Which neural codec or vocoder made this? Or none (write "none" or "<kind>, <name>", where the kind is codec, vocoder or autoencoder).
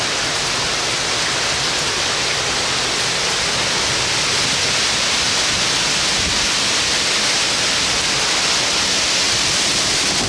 none